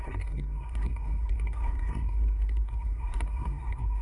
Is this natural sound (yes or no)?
no